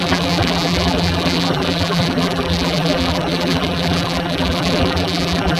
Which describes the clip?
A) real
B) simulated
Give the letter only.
B